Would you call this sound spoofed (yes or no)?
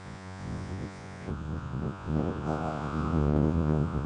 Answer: yes